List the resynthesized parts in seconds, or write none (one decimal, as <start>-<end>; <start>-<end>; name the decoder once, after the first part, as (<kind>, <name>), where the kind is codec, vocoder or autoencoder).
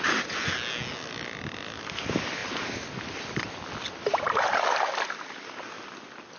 none